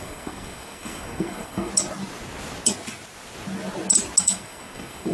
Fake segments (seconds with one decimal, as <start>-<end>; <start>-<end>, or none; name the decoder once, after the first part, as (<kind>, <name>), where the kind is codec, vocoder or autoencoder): 0.0-1.7 (codec, SNAC); 4.2-5.1